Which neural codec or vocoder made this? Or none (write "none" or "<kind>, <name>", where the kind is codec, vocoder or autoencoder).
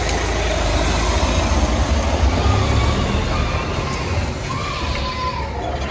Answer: none